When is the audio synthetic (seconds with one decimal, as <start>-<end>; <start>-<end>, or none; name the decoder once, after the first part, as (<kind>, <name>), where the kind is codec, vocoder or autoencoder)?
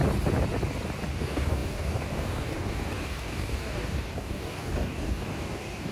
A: 1.1-5.9 (codec, DAC)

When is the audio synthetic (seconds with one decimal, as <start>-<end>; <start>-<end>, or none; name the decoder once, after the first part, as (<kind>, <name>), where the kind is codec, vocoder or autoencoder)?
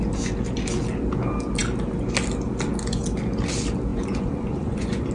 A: 3.9-5.1 (vocoder, Vocos)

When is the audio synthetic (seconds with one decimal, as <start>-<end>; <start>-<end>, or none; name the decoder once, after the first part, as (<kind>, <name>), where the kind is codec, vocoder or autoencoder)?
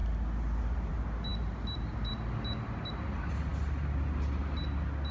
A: none